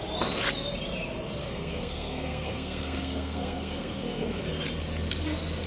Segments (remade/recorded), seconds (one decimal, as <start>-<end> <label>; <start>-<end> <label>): 0.0-1.4 recorded; 1.4-4.4 remade; 4.4-5.7 recorded